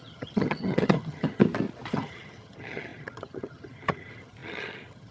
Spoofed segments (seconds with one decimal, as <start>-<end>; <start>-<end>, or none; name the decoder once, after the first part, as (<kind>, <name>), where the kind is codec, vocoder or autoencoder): 0.0-1.4 (vocoder, HiFi-GAN); 1.9-5.1